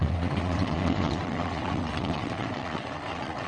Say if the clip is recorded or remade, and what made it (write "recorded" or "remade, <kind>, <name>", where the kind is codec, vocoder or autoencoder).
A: remade, vocoder, WaveNeXt